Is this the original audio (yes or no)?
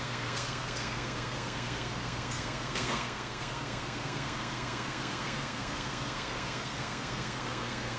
no